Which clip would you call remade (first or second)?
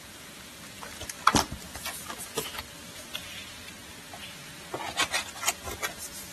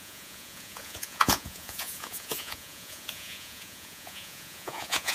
second